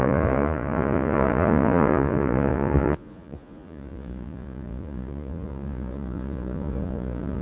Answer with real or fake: fake